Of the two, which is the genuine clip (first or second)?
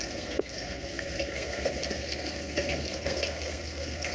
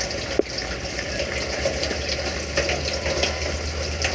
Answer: second